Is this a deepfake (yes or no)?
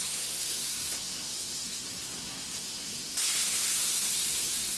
yes